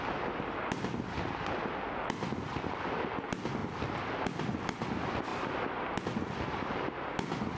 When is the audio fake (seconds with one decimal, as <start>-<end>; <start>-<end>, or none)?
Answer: none